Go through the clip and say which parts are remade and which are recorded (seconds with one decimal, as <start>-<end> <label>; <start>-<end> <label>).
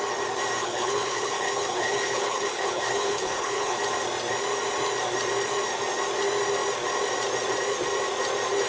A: 0.0-0.6 recorded; 0.6-3.8 remade; 3.8-8.7 recorded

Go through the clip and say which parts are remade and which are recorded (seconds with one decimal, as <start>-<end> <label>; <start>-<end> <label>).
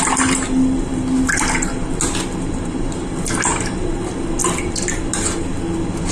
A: 0.0-6.1 recorded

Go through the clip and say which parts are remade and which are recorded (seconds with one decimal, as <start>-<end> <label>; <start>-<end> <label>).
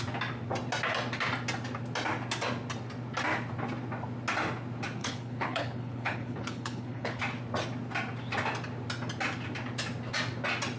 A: 0.0-5.0 recorded; 5.0-7.2 remade; 7.2-10.8 recorded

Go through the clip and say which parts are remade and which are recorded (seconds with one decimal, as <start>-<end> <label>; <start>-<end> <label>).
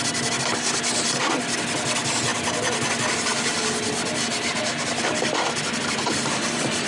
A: 0.0-6.9 recorded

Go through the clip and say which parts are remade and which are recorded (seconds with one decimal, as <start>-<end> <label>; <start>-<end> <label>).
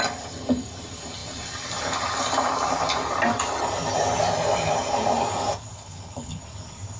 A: 0.0-5.7 recorded; 5.7-6.4 remade; 6.4-7.0 recorded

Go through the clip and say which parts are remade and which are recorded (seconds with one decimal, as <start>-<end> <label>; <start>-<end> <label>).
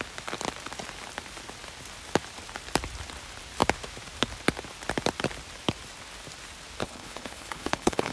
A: 0.0-6.8 recorded; 6.8-8.1 remade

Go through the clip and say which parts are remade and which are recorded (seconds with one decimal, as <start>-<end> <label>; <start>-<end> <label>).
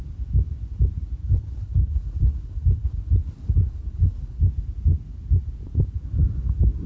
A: 0.0-1.2 recorded; 1.2-4.4 remade; 4.4-6.9 recorded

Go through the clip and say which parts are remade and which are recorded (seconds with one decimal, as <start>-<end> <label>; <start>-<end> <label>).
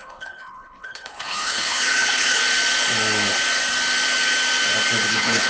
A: 0.0-2.4 remade; 2.4-5.1 recorded; 5.1-5.5 remade